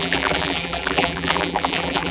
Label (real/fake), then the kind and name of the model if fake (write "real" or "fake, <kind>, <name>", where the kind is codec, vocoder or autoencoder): fake, vocoder, BigVGAN v2